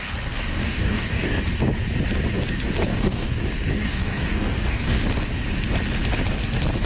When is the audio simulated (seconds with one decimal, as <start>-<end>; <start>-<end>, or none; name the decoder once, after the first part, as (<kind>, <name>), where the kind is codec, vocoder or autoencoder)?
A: 0.5-1.4 (codec, DAC); 2.9-3.4; 3.8-5.0